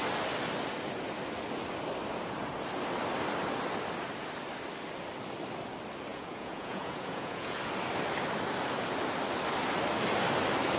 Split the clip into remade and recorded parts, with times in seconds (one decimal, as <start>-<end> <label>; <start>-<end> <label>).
0.0-6.1 recorded; 6.1-7.6 remade; 7.6-10.8 recorded